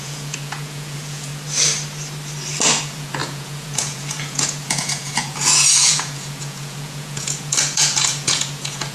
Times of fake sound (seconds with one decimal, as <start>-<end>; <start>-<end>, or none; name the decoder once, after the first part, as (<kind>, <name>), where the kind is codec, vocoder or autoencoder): 0.0-1.3 (vocoder, Vocos); 2.8-8.9